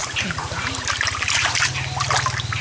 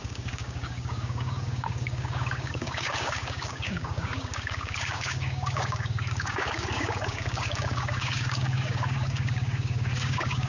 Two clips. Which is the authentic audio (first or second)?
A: first